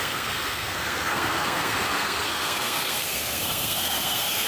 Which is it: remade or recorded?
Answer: remade